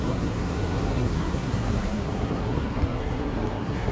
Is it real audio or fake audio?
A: fake